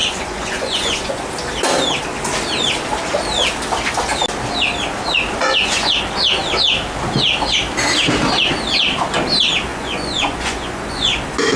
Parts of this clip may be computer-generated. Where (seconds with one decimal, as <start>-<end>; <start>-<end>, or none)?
0.0-1.2; 5.4-5.9; 9.7-11.1